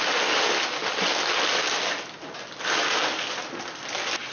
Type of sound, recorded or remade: recorded